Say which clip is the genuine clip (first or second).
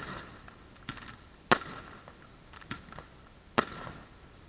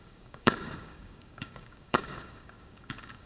first